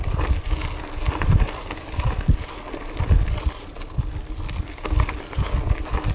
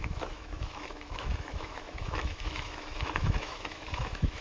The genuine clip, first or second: first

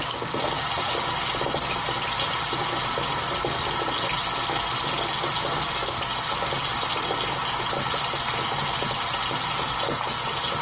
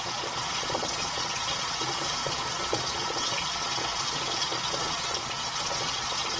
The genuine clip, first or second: first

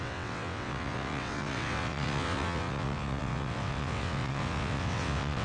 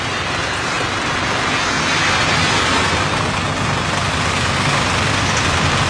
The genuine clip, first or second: second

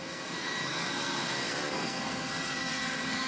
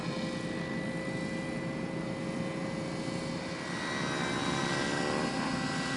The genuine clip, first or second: second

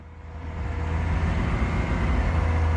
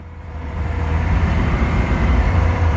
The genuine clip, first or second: first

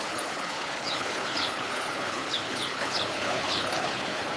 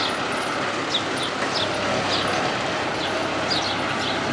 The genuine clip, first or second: second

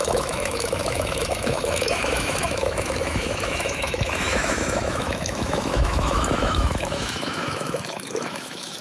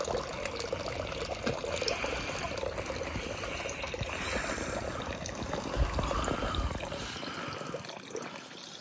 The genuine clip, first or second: second